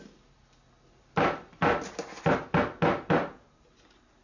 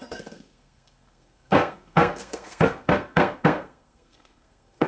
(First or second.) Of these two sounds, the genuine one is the first